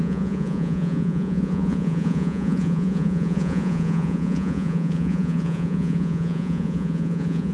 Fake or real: fake